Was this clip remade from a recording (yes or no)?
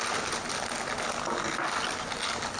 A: no